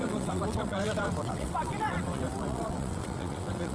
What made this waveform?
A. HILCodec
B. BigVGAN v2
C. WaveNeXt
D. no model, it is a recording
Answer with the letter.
C